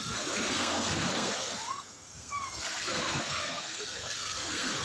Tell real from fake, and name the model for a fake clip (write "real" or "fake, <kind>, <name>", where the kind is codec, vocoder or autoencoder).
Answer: fake, codec, SNAC